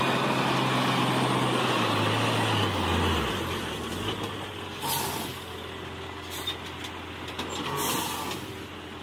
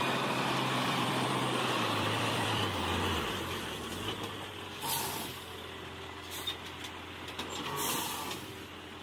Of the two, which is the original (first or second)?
first